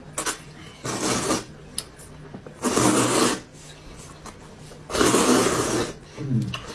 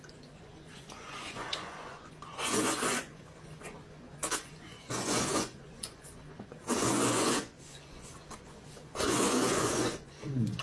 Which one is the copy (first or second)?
second